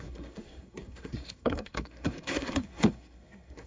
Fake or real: fake